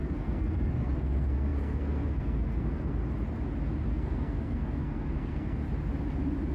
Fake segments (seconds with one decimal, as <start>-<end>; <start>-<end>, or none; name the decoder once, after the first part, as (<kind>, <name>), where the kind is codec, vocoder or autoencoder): 0.0-3.0 (codec, SNAC); 3.9-5.6